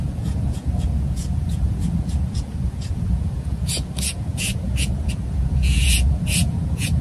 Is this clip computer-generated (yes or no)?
yes